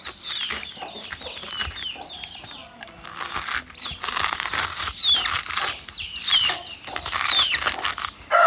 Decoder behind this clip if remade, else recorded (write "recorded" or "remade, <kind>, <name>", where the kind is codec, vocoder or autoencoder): recorded